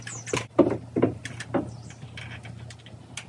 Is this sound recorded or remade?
recorded